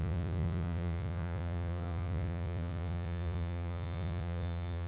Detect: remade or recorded remade